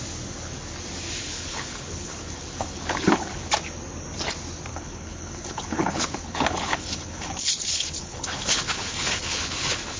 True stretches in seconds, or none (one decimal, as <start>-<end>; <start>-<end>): 0.0-1.2; 3.5-4.7